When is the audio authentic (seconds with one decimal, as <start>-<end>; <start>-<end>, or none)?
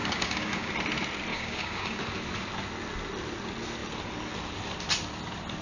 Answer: 0.7-1.3; 2.0-5.6